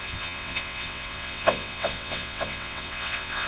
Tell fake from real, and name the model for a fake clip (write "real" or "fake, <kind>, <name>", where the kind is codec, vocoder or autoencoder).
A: fake, vocoder, WaveNeXt